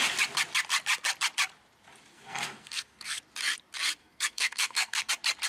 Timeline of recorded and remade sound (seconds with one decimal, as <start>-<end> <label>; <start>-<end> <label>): 0.0-2.1 recorded; 2.1-3.2 remade; 3.2-4.0 recorded; 4.0-5.1 remade; 5.1-5.5 recorded